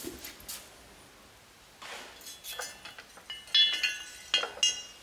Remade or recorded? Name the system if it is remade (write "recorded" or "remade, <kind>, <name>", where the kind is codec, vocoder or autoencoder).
recorded